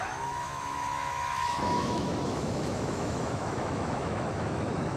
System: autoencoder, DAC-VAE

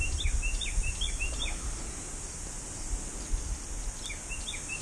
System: none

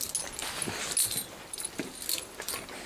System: none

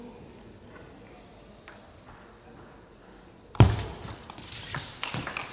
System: none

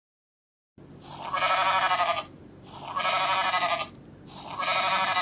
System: none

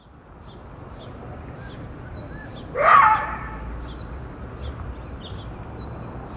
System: none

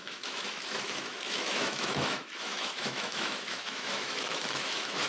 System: autoencoder, DAC-VAE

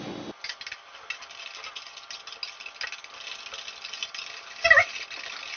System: none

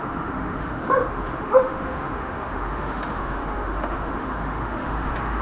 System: autoencoder, DAC-VAE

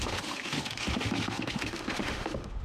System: autoencoder, DAC-VAE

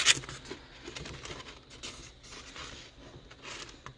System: none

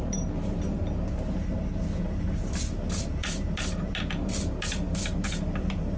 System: none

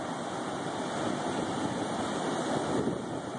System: none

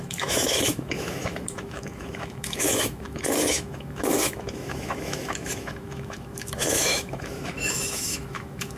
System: autoencoder, DAC-VAE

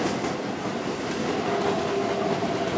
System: none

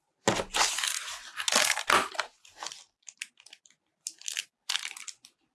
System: none